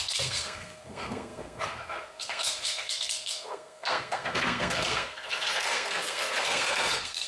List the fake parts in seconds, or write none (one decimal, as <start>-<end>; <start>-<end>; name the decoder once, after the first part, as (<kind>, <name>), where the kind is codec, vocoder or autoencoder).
0.0-7.3 (codec, SNAC)